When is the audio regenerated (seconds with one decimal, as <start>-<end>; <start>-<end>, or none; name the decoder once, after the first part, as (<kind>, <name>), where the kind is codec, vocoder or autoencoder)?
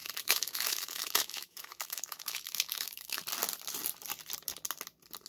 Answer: 0.0-3.2 (autoencoder, DAC-VAE)